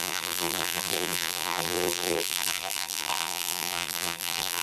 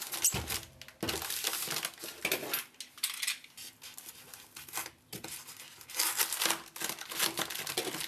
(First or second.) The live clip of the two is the second